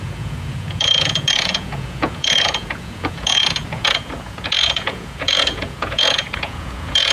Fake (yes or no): yes